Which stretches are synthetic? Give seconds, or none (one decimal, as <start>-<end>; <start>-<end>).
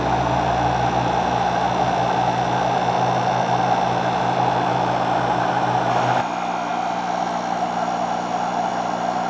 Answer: none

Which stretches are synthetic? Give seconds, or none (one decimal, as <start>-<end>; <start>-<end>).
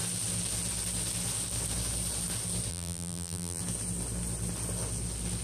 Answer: 2.7-3.6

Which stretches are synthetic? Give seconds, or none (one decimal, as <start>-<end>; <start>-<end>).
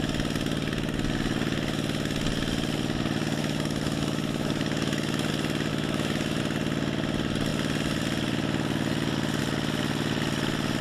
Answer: 3.4-5.3; 5.7-6.4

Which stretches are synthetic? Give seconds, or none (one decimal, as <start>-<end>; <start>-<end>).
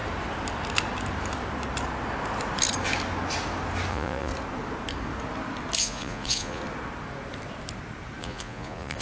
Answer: 3.9-4.3; 5.8-6.6; 8.2-9.0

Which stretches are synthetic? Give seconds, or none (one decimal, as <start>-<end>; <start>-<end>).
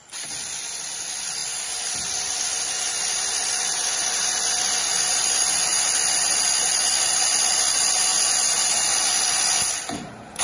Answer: 1.4-2.0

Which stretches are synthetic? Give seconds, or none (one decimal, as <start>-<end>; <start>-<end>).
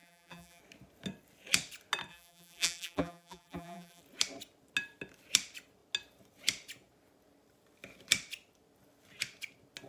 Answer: 0.0-0.6; 2.1-4.0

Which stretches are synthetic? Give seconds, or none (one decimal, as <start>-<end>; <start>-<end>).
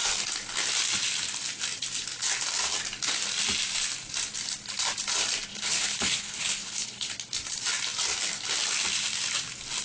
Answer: 5.5-7.1